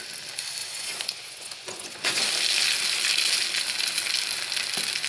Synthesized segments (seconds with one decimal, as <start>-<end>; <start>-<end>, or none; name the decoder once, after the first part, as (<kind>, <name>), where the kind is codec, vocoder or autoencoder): 0.6-2.2 (vocoder, Vocos)